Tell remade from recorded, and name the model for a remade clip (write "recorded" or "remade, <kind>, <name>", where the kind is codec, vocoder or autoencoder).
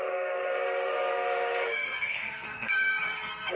remade, codec, SNAC